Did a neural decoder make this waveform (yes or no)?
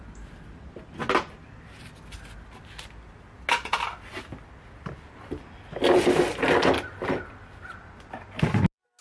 no